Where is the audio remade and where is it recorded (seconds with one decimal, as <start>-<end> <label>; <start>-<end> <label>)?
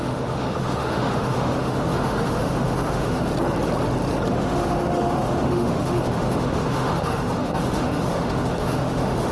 0.0-3.3 remade; 3.3-4.3 recorded; 4.3-9.3 remade